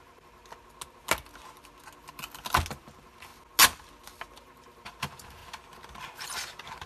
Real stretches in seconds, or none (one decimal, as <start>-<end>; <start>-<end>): 0.4-2.7; 3.3-4.4; 5.4-6.0